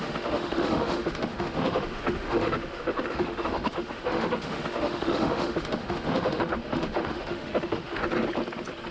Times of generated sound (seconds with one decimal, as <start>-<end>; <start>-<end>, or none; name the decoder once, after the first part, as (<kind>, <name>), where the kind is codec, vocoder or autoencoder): 0.0-8.0 (autoencoder, DAC-VAE)